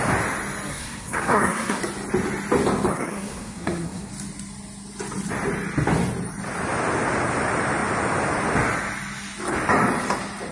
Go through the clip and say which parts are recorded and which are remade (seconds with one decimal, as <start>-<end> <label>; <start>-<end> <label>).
0.0-0.7 recorded; 0.7-1.8 remade; 1.8-2.9 recorded; 2.9-4.1 remade; 4.1-10.5 recorded